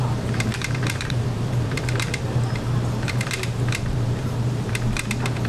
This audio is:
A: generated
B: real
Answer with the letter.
A